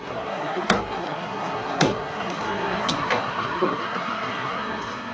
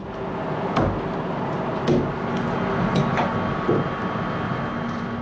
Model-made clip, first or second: first